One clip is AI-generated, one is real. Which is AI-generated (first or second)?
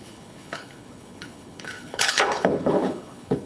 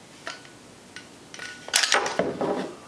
first